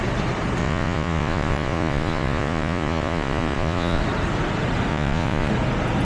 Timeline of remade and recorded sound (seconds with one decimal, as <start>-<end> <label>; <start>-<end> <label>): 0.0-0.6 recorded; 0.6-4.0 remade; 4.0-4.9 recorded; 4.9-5.5 remade; 5.5-6.0 recorded